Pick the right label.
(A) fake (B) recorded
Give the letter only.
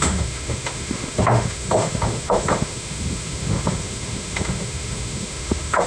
A